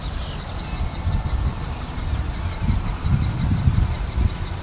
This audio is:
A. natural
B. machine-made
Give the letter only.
A